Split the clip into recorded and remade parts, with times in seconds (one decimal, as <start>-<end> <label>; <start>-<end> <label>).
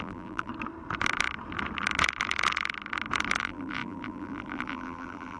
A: 0.0-0.5 remade; 0.5-3.4 recorded; 3.4-5.4 remade